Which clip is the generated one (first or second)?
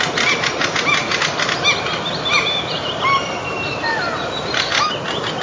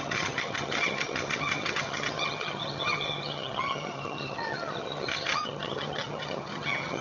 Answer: second